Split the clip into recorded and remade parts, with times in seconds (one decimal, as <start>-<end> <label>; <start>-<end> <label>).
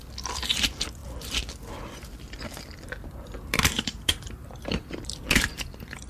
0.0-3.7 recorded; 3.7-4.9 remade; 4.9-6.1 recorded